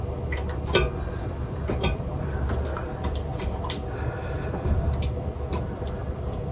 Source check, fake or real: real